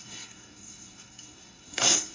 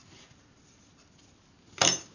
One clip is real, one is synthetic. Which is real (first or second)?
second